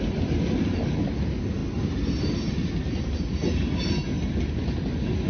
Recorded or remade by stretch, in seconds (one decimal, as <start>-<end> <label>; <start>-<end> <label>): 0.0-5.3 recorded